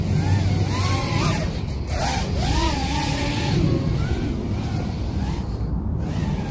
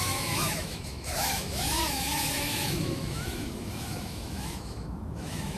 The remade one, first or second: second